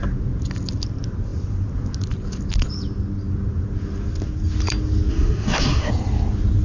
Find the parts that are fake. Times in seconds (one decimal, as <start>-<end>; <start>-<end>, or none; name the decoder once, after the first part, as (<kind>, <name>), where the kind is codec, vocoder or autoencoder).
5.1-5.9 (codec, SNAC)